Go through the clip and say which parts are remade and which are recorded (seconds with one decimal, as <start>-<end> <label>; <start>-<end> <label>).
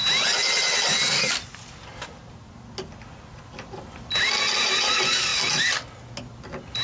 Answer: 0.0-6.8 recorded